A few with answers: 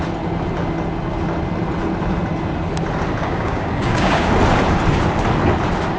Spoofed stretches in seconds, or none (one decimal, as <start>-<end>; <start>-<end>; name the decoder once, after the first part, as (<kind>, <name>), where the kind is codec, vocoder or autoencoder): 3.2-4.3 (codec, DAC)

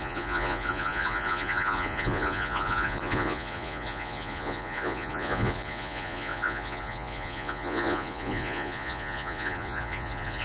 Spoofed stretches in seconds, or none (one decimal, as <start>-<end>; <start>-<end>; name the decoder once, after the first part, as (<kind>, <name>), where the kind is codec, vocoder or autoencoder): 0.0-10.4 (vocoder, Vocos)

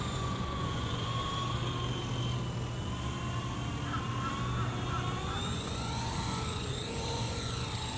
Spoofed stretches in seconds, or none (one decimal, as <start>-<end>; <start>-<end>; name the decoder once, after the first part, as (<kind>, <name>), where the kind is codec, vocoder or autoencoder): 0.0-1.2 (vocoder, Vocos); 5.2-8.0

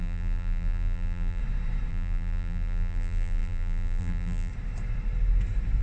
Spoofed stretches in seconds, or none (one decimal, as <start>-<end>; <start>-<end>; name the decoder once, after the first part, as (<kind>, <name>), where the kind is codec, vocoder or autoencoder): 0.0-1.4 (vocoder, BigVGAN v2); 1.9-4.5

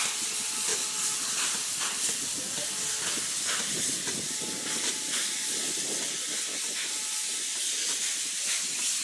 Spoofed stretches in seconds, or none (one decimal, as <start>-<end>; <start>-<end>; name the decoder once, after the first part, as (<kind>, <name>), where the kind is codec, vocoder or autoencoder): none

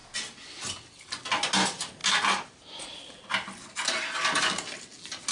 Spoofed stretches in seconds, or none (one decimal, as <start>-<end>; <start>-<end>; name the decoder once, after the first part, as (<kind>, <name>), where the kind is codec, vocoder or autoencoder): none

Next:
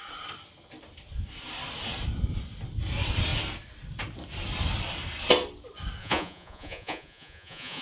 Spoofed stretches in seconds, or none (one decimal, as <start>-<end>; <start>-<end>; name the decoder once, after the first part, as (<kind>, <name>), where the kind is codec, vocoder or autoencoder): 6.0-7.8 (vocoder, Vocos)

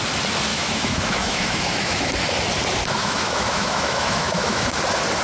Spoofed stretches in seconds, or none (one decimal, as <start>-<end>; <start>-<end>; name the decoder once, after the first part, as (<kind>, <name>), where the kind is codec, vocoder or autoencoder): 0.5-2.1 (autoencoder, DAC-VAE); 3.0-4.8